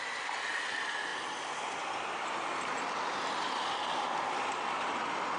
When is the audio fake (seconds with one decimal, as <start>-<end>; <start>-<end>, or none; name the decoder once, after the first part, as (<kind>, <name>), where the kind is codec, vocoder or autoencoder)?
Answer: none